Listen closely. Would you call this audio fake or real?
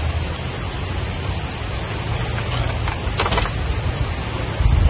real